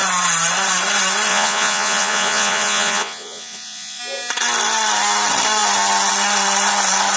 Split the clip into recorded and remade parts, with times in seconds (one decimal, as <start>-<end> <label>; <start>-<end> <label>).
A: 0.0-1.3 recorded; 1.3-4.0 remade; 4.0-7.2 recorded

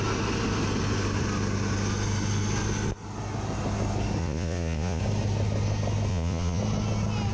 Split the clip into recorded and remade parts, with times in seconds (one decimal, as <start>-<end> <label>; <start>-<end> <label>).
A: 0.0-4.2 recorded; 4.2-5.0 remade; 5.0-6.1 recorded; 6.1-6.6 remade; 6.6-7.3 recorded

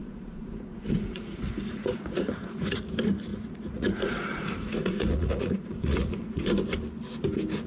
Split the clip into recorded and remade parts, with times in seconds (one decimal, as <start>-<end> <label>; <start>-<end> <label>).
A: 0.0-2.8 remade; 2.8-3.3 recorded; 3.3-6.5 remade; 6.5-7.7 recorded

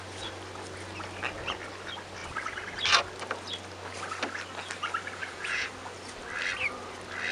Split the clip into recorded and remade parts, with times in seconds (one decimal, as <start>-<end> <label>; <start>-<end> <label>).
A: 0.0-5.2 recorded; 5.2-5.7 remade; 5.7-7.3 recorded

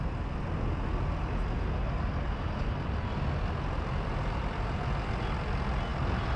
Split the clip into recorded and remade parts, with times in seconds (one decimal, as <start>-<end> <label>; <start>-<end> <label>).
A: 0.0-6.4 recorded